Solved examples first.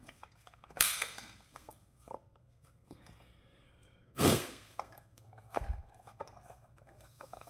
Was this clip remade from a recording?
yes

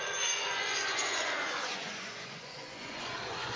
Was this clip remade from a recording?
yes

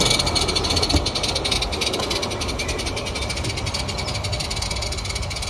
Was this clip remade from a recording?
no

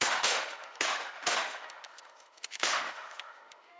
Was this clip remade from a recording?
yes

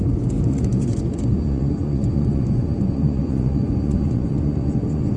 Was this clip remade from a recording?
yes